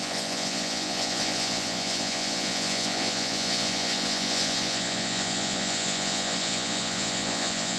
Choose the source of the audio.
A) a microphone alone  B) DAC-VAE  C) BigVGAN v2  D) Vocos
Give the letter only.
D